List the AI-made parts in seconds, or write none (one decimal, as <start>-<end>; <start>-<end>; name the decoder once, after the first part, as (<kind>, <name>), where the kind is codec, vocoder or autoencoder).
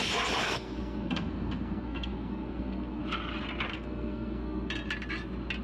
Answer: 0.4-3.0 (codec, SNAC); 3.7-4.7